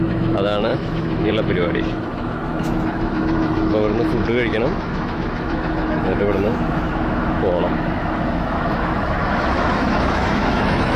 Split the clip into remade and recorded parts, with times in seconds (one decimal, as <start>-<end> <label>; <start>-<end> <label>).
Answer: 0.0-11.0 remade

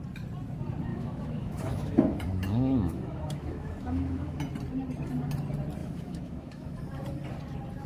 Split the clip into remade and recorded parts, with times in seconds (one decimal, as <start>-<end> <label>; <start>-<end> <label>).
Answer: 0.0-0.9 recorded; 0.9-4.4 remade; 4.4-5.8 recorded; 5.8-6.8 remade; 6.8-7.9 recorded

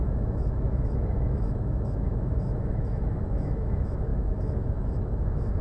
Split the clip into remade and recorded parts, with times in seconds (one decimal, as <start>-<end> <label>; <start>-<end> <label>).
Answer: 0.0-5.6 remade

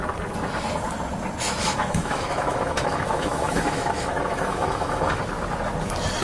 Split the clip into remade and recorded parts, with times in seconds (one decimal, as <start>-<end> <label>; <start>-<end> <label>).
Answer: 0.0-1.6 recorded; 1.6-5.2 remade; 5.2-6.2 recorded

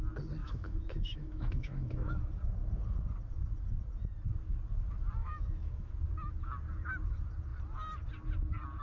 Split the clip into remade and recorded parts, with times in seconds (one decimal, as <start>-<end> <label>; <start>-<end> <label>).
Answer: 0.0-0.4 recorded; 0.4-2.2 remade; 2.2-5.2 recorded; 5.2-5.9 remade; 5.9-8.8 recorded

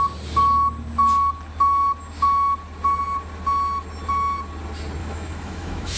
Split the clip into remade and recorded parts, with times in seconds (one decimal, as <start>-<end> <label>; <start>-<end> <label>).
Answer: 0.0-5.0 recorded; 5.0-6.0 remade

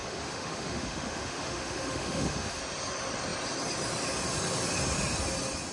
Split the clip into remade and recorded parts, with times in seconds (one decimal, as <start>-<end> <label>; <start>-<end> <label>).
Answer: 0.0-2.6 remade; 2.6-5.7 recorded

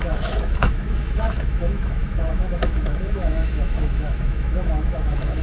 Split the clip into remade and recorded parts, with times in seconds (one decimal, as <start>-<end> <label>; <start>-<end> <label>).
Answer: 0.0-5.4 remade